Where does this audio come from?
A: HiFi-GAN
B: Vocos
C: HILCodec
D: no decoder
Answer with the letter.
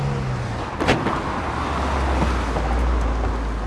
D